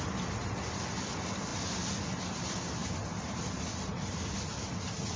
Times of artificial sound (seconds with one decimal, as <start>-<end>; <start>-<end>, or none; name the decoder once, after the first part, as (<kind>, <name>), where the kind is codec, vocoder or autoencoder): none